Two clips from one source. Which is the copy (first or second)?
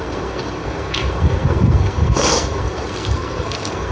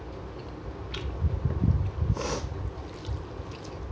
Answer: first